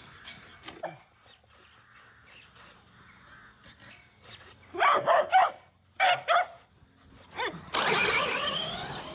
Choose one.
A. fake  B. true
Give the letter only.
B